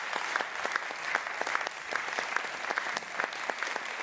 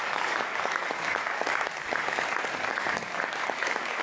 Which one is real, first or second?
first